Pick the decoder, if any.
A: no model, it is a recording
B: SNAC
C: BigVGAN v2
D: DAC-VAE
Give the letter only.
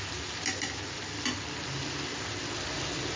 A